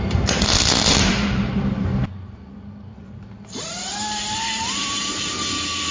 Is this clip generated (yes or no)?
yes